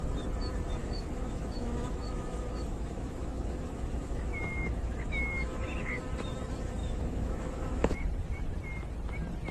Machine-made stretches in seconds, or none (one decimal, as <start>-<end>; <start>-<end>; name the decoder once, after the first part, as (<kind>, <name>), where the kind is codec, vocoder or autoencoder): 0.8-5.9 (autoencoder, DAC-VAE); 6.8-8.0